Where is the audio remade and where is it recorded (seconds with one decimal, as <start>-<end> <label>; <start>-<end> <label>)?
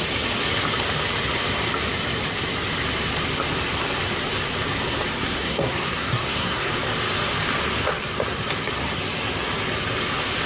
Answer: 0.0-5.1 recorded; 5.1-6.7 remade; 6.7-10.5 recorded